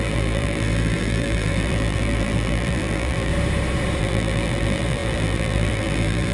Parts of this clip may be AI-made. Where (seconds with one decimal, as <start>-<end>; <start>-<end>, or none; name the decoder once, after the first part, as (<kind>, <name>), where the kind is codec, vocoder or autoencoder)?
0.0-3.3 (vocoder, BigVGAN v2); 4.0-6.3